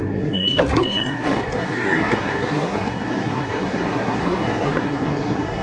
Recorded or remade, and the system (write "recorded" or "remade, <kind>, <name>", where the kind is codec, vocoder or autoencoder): remade, codec, SNAC